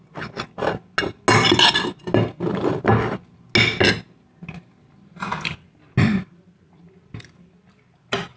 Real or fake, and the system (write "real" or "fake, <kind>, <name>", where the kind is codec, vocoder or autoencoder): real